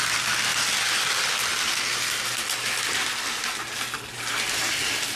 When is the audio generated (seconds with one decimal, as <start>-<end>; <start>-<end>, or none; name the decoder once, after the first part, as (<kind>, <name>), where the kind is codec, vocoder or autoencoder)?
0.5-1.1 (vocoder, BigVGAN v2)